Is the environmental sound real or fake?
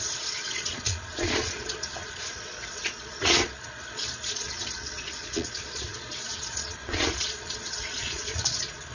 fake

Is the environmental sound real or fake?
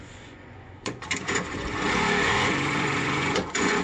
fake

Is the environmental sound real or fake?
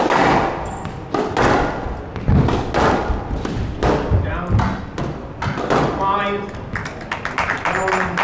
real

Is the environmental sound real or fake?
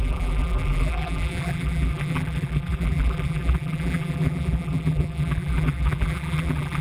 fake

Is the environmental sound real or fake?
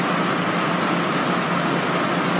real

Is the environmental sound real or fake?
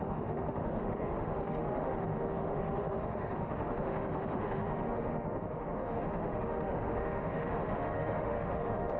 fake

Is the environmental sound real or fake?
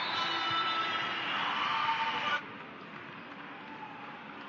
fake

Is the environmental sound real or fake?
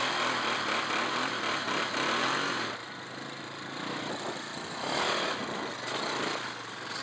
real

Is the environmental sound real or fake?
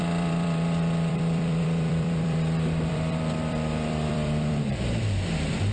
fake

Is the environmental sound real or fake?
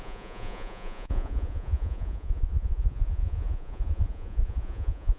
fake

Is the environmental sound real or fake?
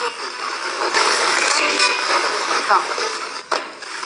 fake